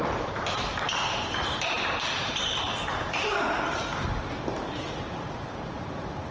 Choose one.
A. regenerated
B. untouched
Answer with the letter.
A